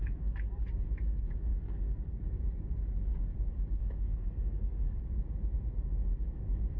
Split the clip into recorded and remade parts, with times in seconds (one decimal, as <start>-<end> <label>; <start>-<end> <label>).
0.0-0.6 remade; 0.6-1.5 recorded; 1.5-2.1 remade; 2.1-3.8 recorded; 3.8-5.0 remade; 5.0-6.8 recorded